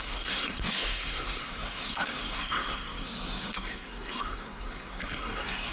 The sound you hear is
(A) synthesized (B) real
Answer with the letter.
A